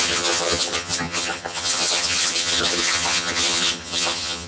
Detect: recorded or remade remade